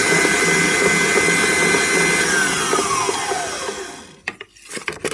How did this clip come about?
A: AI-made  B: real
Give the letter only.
B